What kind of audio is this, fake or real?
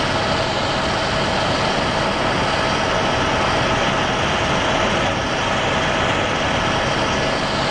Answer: real